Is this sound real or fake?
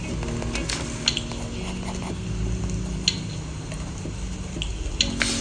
real